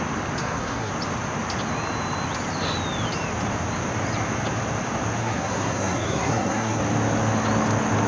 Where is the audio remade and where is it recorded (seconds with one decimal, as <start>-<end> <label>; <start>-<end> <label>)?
0.0-0.4 recorded; 0.4-0.9 remade; 0.9-5.2 recorded; 5.2-6.8 remade; 6.8-8.1 recorded